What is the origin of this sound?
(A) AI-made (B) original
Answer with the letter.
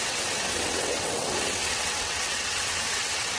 A